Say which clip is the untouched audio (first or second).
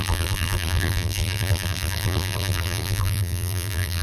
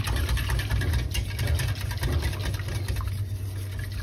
second